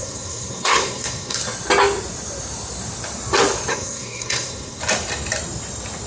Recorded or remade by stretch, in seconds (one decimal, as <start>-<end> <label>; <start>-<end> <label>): 0.0-1.4 remade; 1.4-3.7 recorded; 3.7-4.8 remade; 4.8-6.1 recorded